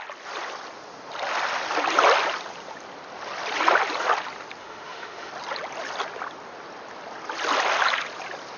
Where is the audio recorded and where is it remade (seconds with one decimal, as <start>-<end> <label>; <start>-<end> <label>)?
0.0-4.6 recorded; 4.6-5.3 remade; 5.3-8.6 recorded